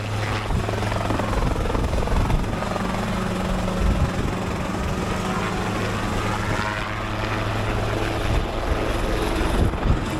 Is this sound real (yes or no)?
yes